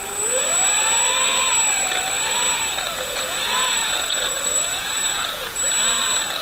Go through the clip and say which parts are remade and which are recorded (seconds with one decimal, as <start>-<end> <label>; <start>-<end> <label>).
0.0-2.9 recorded; 2.9-5.6 remade; 5.6-6.4 recorded